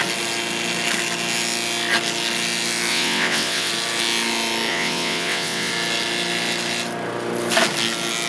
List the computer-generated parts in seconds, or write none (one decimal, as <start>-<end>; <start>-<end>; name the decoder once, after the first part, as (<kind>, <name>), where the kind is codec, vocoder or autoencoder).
2.9-3.7 (vocoder, WaveNeXt); 4.7-5.7